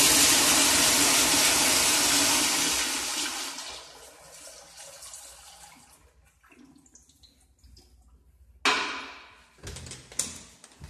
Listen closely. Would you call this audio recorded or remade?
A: recorded